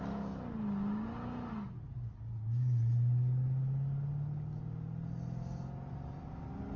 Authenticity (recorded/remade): recorded